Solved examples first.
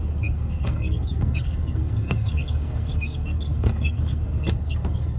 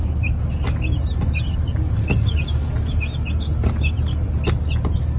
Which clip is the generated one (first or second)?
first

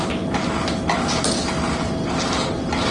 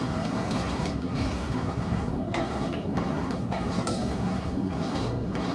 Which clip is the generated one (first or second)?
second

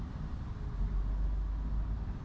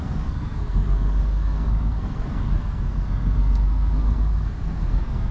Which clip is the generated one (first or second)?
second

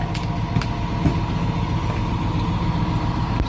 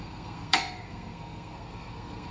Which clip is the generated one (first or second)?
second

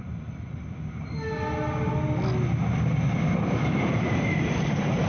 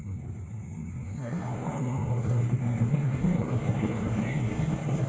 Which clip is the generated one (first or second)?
second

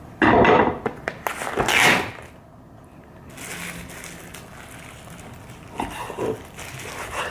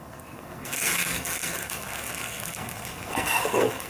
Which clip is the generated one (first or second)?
second